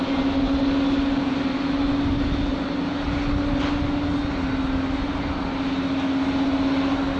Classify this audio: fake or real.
real